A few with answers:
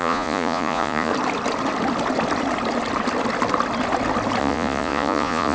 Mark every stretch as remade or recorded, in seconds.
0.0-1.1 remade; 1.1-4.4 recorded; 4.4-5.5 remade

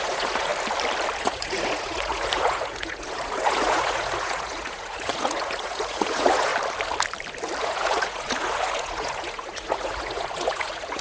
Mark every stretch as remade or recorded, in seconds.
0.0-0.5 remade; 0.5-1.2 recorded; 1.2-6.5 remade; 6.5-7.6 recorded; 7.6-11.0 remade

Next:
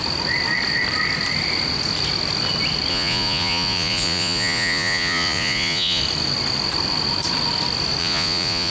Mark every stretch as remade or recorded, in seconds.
0.0-2.9 recorded; 2.9-6.0 remade; 6.0-8.0 recorded; 8.0-8.7 remade

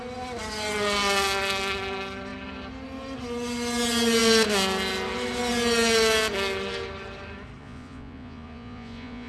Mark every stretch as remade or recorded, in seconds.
0.0-7.6 recorded; 7.6-9.3 remade